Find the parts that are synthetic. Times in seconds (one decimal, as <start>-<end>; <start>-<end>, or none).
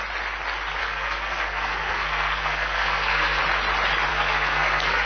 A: 0.8-3.4; 4.1-5.1